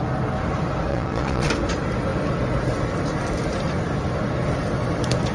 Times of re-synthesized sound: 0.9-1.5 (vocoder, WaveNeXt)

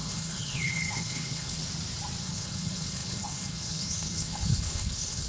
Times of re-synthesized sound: 0.0-1.6 (codec, HILCodec); 2.2-5.3